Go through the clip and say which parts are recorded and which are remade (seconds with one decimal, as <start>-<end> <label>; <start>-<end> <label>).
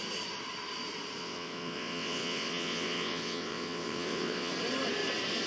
0.0-1.2 recorded; 1.2-4.5 remade; 4.5-5.5 recorded